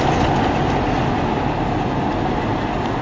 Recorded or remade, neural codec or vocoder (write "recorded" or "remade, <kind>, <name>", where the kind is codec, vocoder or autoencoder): recorded